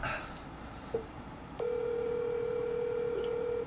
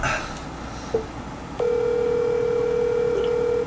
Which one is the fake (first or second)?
first